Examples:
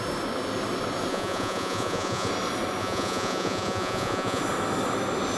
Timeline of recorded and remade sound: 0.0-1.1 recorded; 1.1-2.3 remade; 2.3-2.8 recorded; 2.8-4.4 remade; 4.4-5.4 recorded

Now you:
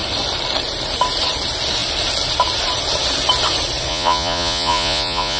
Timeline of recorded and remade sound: 0.0-3.9 recorded; 3.9-5.4 remade